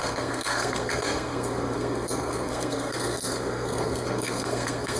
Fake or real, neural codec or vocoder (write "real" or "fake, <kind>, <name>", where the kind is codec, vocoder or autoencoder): fake, codec, SNAC